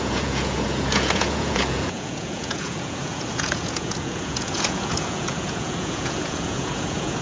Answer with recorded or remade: remade